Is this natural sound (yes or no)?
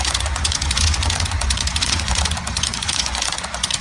no